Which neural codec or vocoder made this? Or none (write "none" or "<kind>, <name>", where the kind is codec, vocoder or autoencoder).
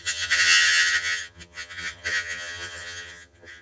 vocoder, HiFi-GAN